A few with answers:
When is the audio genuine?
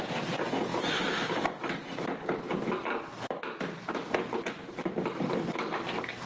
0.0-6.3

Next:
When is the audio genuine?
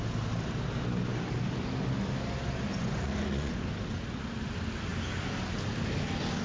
0.0-2.7; 3.5-6.4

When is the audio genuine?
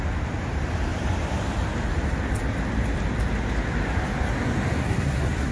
0.0-4.8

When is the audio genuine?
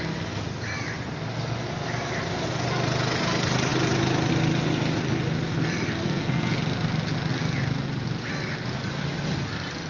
0.0-6.0; 6.6-9.9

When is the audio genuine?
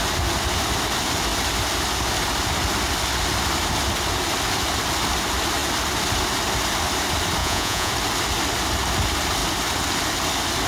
0.0-7.4; 7.9-10.7